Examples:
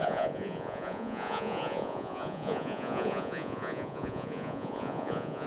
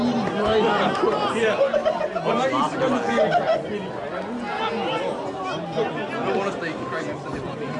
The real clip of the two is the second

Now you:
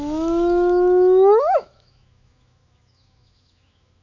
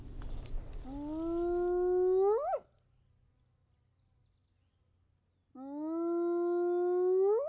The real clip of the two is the second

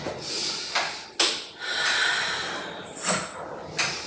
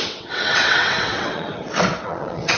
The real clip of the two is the first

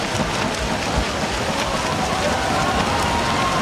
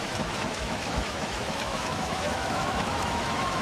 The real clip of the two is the first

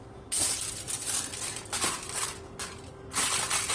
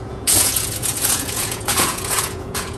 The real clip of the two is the first